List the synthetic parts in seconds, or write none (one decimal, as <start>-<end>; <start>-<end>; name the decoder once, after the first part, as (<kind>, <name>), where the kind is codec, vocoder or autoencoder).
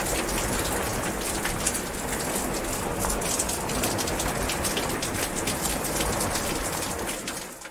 none